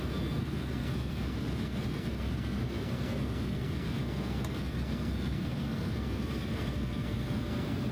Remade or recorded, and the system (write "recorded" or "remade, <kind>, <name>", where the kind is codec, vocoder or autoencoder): remade, codec, SNAC